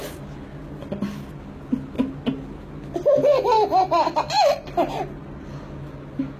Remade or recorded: recorded